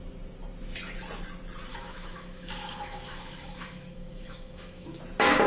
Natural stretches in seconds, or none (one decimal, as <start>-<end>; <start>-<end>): 0.0-1.7; 5.0-5.5